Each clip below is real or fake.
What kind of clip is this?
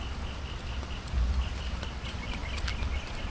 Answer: real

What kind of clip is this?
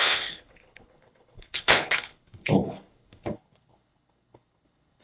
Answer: fake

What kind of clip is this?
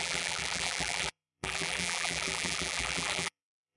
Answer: fake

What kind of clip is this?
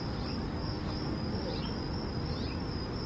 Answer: real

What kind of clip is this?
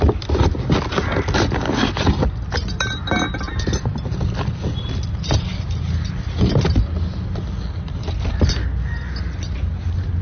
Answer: real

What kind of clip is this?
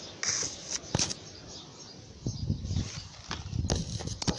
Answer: real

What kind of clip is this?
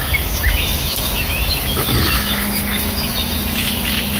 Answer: fake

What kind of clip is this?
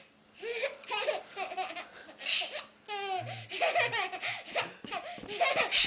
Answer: real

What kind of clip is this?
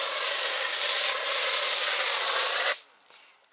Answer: real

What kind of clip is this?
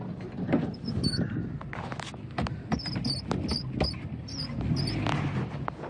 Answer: real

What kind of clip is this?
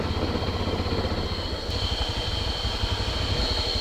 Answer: real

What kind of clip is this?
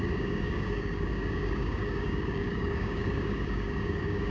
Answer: fake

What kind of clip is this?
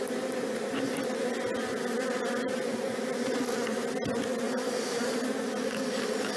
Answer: real